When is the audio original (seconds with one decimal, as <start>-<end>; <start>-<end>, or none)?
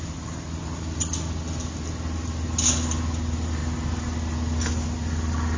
0.0-5.6